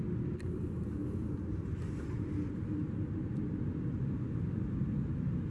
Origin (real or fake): real